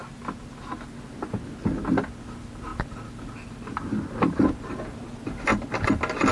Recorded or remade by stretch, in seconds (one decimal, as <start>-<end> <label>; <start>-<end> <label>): 0.0-6.3 recorded